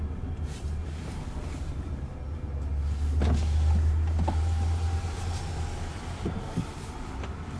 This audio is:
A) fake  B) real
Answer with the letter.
B